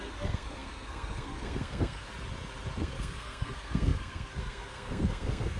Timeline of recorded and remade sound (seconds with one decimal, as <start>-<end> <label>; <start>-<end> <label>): 0.0-2.1 remade; 2.1-2.8 recorded; 2.8-5.6 remade